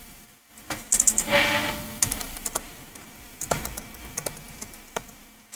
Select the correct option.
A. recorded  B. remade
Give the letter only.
A